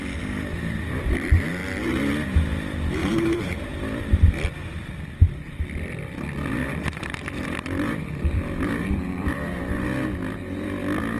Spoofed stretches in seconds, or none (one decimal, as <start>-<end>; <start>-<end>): 3.0-3.7; 6.6-9.3